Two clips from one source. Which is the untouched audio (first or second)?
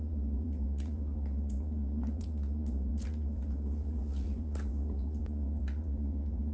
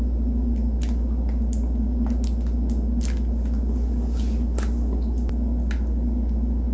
second